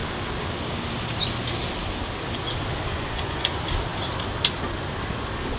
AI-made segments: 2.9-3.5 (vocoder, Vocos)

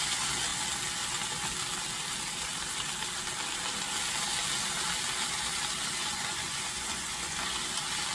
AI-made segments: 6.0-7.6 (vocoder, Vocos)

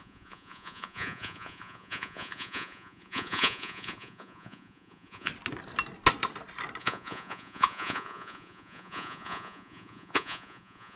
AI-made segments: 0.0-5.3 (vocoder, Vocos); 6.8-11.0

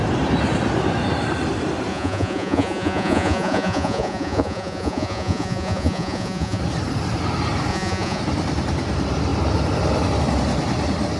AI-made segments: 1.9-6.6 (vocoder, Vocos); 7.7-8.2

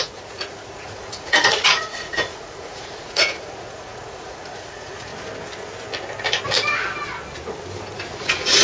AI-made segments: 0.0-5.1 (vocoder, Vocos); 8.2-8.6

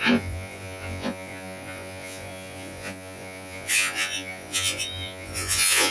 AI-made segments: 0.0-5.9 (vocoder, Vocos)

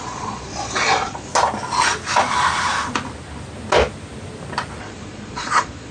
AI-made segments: 0.0-1.3 (vocoder, Vocos); 4.8-5.9